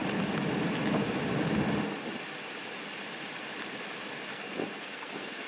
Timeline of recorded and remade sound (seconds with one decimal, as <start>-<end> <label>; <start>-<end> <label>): 0.0-4.3 recorded; 4.3-5.5 remade